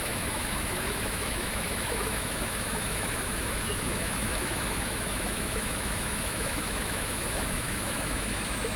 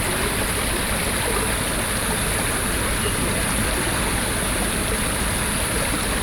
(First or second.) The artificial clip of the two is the first